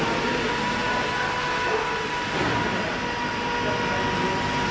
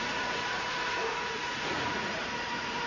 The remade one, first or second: second